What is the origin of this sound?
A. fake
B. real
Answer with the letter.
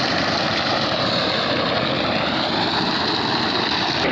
B